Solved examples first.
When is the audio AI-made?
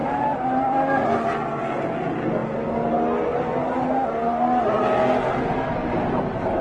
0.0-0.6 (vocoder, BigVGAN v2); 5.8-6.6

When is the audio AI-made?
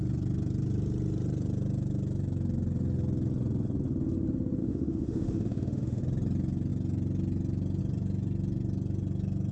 4.6-6.0 (autoencoder, DAC-VAE)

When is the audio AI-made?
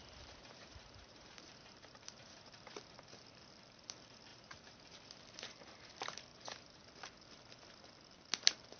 0.0-2.7 (vocoder, BigVGAN v2); 4.3-5.2; 6.3-6.9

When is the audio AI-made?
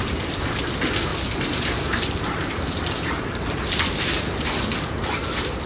1.1-4.5 (vocoder, BigVGAN v2)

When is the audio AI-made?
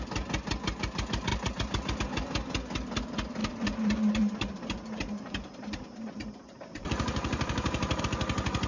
1.3-2.0 (vocoder, BigVGAN v2); 3.4-8.0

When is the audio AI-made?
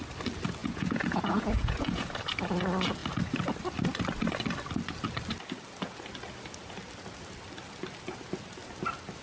0.6-2.1 (vocoder, Vocos)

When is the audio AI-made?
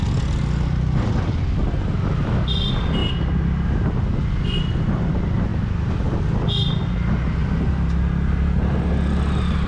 none